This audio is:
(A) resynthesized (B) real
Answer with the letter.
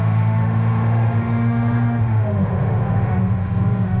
A